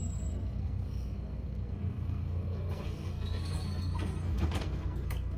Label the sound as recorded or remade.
remade